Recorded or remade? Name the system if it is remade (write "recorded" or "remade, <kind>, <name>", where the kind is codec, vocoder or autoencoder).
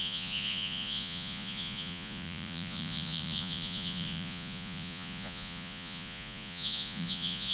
remade, vocoder, Vocos